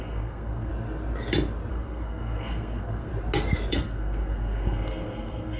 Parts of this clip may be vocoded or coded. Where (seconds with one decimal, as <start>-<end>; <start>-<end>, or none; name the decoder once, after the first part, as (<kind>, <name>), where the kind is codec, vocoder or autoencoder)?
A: 0.0-0.7 (codec, SNAC); 1.7-3.1; 3.7-5.6